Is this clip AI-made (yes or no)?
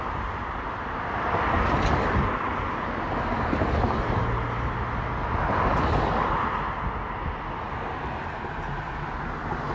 no